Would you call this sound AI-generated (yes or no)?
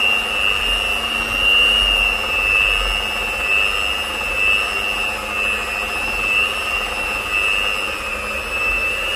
no